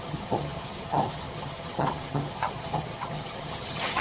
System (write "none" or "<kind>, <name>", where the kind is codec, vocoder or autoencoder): vocoder, HiFi-GAN